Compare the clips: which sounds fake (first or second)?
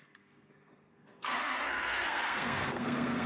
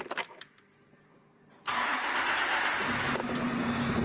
first